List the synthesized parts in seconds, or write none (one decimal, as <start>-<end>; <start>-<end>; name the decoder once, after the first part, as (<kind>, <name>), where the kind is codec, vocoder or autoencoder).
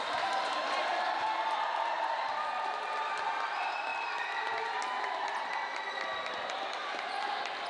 none